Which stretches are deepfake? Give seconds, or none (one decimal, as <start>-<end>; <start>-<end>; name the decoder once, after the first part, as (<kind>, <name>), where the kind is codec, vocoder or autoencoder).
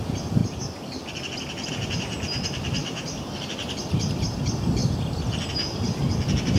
none